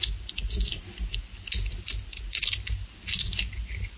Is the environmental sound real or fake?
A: real